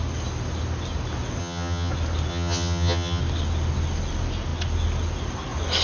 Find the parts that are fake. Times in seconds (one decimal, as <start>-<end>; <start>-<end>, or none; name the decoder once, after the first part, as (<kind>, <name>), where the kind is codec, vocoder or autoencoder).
1.4-1.9 (vocoder, HiFi-GAN); 2.3-3.2